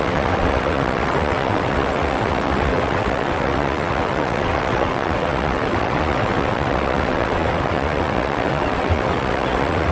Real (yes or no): no